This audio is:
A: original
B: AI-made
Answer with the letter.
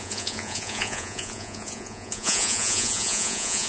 B